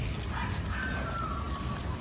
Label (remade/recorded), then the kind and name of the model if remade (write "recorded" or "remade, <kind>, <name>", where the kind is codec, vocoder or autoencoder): recorded